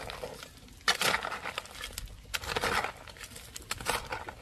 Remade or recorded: recorded